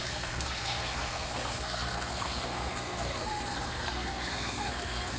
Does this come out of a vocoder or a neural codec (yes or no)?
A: yes